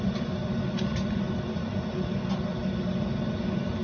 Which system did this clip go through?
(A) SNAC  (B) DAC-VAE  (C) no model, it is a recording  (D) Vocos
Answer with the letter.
C